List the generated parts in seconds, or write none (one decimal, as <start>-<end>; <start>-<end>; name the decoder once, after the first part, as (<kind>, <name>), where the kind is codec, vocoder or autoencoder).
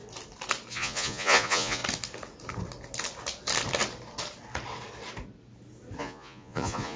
0.7-1.8 (vocoder, Vocos); 6.0-7.0